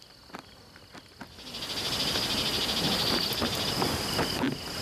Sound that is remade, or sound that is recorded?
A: recorded